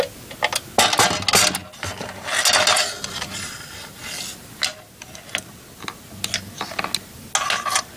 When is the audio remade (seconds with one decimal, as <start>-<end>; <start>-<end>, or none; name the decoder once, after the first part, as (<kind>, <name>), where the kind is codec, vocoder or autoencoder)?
none